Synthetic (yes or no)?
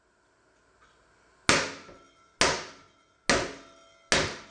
no